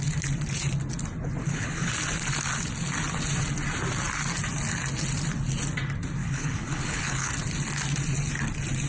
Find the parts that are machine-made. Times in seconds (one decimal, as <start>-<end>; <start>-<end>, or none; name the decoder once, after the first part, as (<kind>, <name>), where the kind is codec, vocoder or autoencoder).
1.4-1.9 (codec, HILCodec); 6.2-7.3